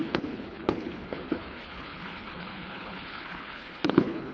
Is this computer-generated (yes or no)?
yes